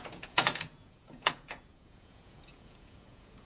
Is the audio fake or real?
fake